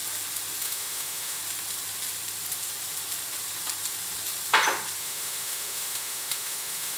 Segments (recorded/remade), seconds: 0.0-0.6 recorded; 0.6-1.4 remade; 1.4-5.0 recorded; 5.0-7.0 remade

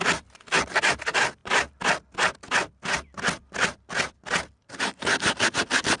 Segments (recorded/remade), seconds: 0.0-6.0 recorded